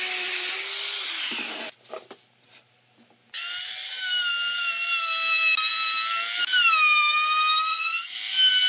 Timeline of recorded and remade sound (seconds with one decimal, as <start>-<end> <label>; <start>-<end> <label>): 0.0-7.7 recorded; 7.7-8.2 remade; 8.2-8.7 recorded